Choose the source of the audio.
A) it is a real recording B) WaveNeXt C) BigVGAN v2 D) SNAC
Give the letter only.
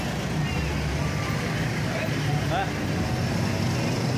A